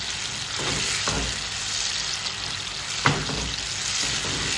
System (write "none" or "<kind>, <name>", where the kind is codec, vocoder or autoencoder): none